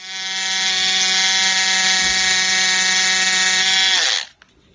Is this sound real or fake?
real